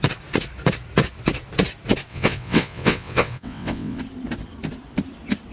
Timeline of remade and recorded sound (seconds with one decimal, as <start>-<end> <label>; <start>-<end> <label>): 0.0-2.1 recorded; 2.1-4.0 remade; 4.0-5.5 recorded